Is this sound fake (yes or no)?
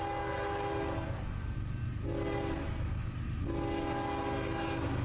no